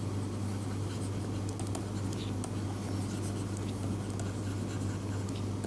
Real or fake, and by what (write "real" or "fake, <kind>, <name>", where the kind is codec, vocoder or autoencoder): real